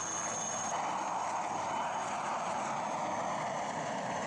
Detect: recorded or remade recorded